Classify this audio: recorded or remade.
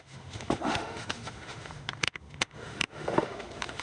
remade